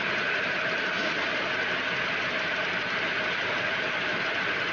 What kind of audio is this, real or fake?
real